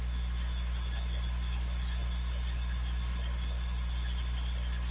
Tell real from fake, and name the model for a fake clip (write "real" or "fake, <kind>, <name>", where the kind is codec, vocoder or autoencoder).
real